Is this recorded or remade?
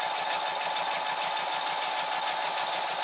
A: recorded